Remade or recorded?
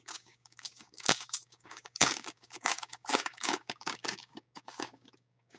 remade